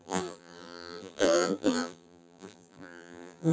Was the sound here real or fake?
fake